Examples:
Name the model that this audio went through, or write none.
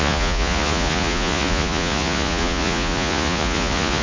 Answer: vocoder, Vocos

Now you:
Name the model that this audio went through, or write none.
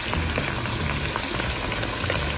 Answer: none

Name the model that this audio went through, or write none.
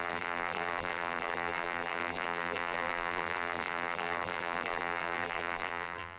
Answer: vocoder, BigVGAN v2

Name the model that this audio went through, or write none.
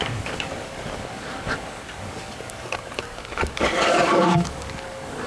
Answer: codec, DAC